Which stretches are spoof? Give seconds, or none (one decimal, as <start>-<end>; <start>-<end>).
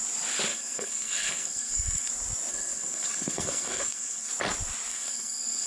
0.5-2.1; 2.5-4.3; 4.9-5.7